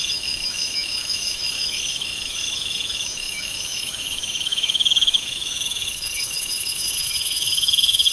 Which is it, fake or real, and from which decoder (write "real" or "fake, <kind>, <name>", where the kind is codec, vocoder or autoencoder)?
fake, autoencoder, DAC-VAE